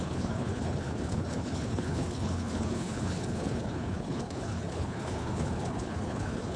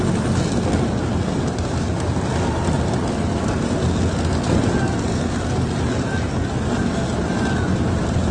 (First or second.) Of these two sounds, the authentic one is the second